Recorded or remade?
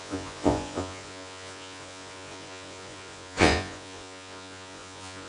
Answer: remade